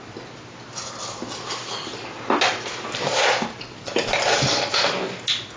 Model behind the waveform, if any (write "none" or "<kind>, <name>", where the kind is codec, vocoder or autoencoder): none